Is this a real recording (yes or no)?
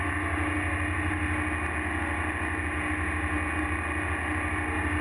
yes